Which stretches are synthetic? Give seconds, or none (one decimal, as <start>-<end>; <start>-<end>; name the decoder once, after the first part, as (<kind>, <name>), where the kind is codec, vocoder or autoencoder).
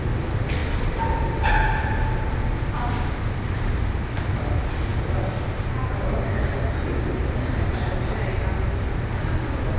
0.6-1.4 (vocoder, BigVGAN v2)